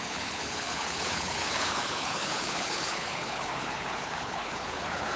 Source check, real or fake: fake